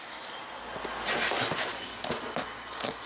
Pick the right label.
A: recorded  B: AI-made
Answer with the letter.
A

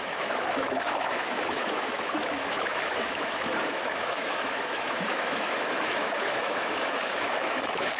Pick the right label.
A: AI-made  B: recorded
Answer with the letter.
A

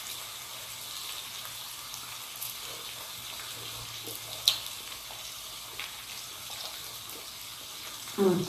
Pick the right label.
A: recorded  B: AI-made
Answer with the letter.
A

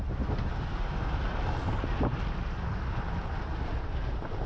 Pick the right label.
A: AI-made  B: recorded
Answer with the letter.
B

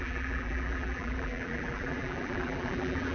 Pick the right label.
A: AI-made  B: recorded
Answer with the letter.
A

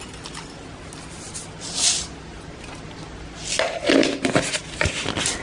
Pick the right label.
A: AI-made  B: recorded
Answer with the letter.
B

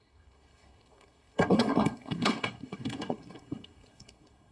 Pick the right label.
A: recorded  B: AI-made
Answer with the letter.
B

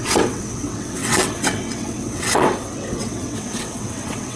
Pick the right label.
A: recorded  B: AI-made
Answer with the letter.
B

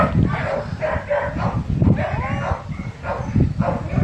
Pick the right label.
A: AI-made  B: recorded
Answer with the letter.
B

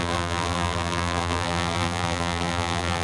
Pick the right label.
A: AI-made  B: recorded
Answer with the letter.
A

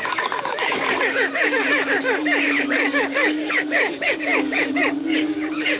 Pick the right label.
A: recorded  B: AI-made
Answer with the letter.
B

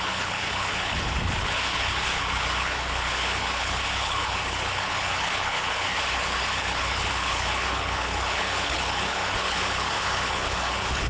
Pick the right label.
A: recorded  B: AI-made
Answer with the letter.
B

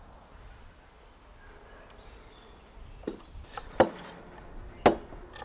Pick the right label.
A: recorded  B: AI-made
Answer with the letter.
A